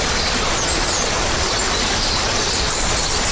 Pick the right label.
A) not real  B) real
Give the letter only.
B